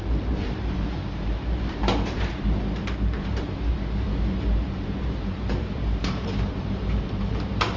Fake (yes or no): yes